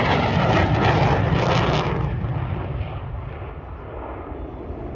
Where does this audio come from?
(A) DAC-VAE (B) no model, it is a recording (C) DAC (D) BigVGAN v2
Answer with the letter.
D